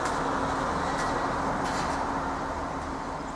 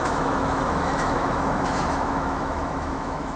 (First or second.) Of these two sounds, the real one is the first